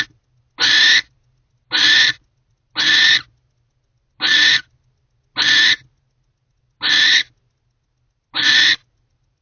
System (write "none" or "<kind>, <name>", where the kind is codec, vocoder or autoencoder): none